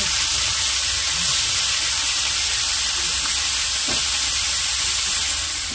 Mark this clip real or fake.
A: real